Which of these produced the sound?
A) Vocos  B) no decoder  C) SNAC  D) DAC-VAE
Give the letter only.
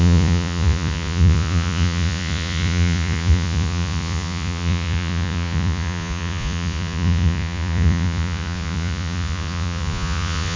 A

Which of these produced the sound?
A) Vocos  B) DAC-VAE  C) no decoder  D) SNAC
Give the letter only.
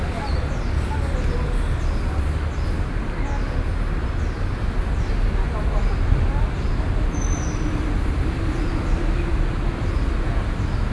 C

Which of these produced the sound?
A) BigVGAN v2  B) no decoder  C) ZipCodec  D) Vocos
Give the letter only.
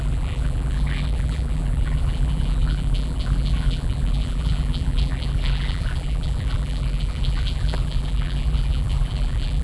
A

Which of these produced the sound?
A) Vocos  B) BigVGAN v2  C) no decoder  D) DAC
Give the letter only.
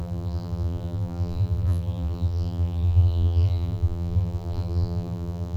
B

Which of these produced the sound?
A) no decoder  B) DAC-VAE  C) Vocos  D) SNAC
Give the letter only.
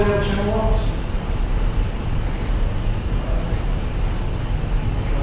A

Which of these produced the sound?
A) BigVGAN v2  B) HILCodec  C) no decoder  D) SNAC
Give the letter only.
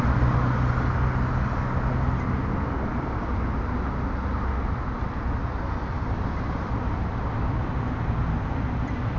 C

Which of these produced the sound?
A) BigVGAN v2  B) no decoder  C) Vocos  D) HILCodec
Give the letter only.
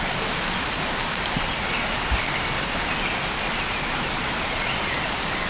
B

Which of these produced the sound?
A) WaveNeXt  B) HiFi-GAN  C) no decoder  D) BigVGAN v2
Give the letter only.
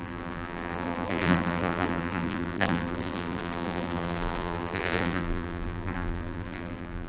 D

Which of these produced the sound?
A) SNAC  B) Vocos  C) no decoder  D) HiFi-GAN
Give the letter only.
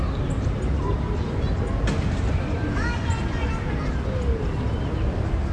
C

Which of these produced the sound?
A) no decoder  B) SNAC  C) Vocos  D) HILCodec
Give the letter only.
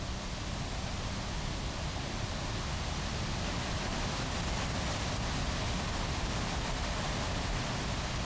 A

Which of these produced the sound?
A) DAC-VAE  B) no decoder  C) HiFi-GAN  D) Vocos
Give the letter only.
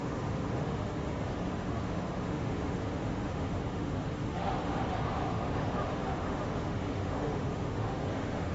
A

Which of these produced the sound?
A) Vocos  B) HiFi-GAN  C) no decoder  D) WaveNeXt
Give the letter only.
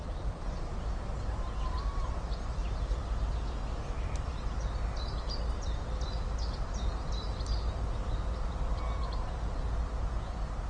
C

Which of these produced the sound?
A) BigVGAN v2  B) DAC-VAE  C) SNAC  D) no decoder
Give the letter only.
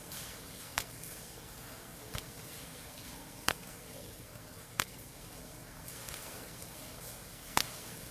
C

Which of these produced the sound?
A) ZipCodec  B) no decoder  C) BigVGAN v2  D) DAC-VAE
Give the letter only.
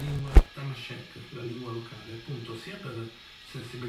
C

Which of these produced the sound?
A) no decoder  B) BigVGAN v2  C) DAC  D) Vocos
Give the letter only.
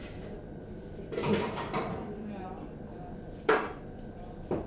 B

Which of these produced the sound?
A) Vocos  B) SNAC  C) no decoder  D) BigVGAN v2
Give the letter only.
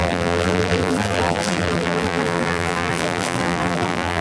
D